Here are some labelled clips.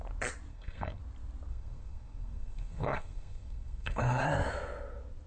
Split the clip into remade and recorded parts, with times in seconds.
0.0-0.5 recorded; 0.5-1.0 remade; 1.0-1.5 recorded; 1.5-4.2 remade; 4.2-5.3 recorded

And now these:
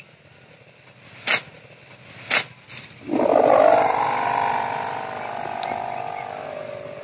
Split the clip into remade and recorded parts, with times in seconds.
0.0-7.0 recorded

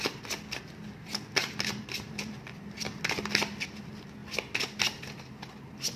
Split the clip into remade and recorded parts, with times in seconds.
0.0-1.4 recorded; 1.4-3.0 remade; 3.0-6.0 recorded

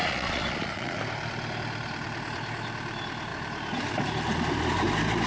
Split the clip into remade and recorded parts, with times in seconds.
0.0-1.0 remade; 1.0-5.3 recorded

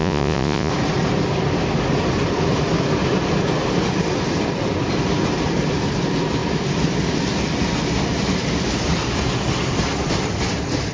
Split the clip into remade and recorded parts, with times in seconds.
0.0-0.7 remade; 0.7-10.9 recorded

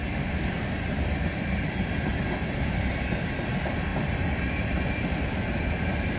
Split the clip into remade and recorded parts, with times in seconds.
0.0-2.2 remade; 2.2-3.9 recorded; 3.9-5.2 remade; 5.2-6.2 recorded

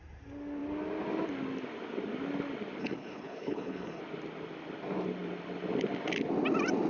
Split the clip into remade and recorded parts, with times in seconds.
0.0-2.8 recorded; 2.8-4.0 remade; 4.0-6.9 recorded